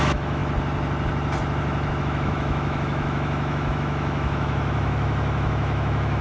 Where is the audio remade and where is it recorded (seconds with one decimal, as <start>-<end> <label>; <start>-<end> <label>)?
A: 0.0-0.4 remade; 0.4-2.0 recorded; 2.0-6.2 remade